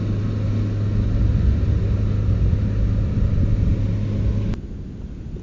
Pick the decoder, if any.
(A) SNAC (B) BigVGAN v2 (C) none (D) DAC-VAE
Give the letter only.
C